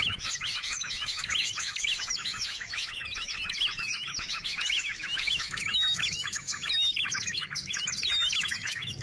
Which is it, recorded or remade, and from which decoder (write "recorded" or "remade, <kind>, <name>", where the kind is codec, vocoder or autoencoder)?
remade, autoencoder, DAC-VAE